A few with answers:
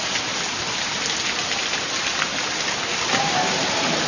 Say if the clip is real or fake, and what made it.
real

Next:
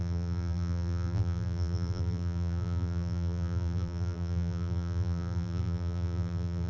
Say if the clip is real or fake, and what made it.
fake, vocoder, BigVGAN v2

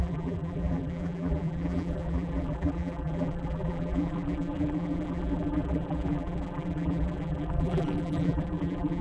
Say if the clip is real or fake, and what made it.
fake, vocoder, BigVGAN v2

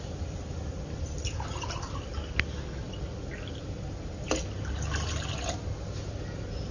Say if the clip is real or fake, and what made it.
real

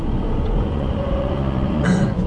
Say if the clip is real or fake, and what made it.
fake, vocoder, Vocos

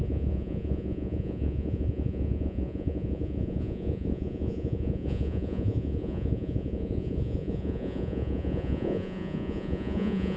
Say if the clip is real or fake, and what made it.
fake, vocoder, Vocos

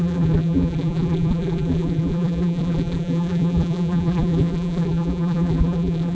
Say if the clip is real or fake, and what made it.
fake, vocoder, BigVGAN v2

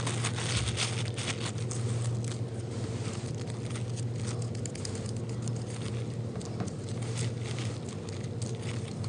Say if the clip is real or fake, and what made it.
real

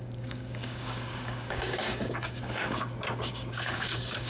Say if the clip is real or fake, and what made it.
fake, codec, DAC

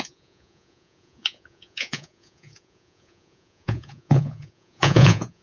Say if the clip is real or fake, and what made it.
fake, vocoder, Vocos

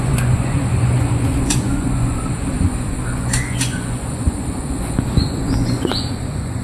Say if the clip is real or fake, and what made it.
fake, vocoder, Vocos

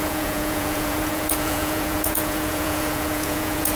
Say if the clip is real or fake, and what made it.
fake, vocoder, Vocos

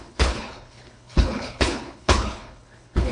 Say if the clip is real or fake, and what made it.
fake, codec, HILCodec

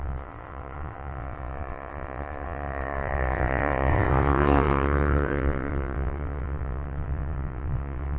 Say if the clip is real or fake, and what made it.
fake, vocoder, WaveNeXt